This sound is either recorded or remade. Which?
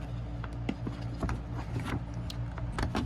recorded